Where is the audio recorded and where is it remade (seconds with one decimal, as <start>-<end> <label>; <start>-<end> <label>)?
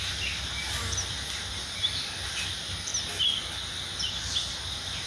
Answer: 0.0-5.1 recorded